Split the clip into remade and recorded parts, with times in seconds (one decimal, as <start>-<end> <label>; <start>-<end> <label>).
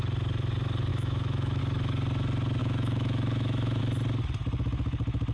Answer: 0.0-0.9 recorded; 0.9-1.6 remade; 1.6-2.6 recorded; 2.6-3.8 remade; 3.8-5.3 recorded